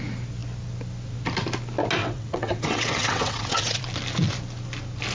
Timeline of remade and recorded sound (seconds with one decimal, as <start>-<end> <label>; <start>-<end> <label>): 0.0-2.0 recorded; 2.0-3.8 remade; 3.8-5.1 recorded